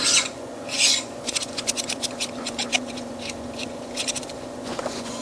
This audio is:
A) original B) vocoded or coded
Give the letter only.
B